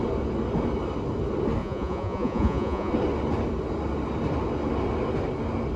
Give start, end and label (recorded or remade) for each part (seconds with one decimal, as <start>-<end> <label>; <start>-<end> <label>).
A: 0.0-1.6 recorded; 1.6-2.9 remade; 2.9-5.8 recorded